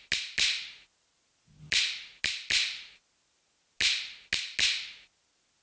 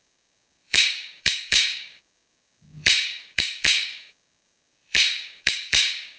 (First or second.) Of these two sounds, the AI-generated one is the second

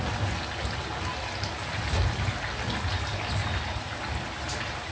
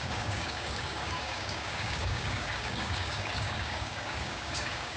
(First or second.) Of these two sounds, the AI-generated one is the second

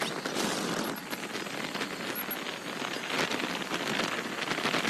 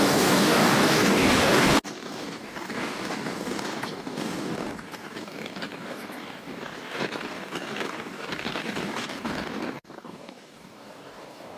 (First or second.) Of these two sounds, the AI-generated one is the second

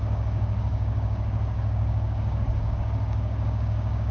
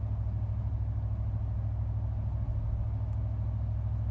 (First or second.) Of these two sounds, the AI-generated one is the first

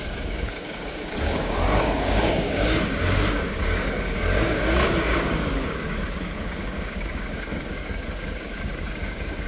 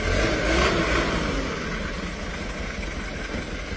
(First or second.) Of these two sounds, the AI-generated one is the first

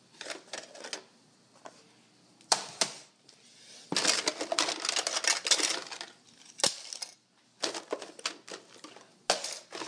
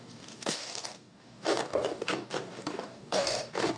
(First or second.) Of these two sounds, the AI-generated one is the second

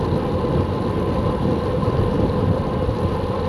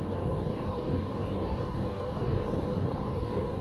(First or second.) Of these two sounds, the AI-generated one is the second